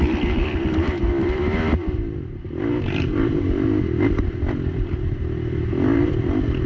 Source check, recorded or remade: remade